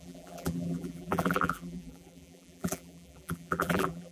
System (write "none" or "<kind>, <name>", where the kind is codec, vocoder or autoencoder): vocoder, BigVGAN v2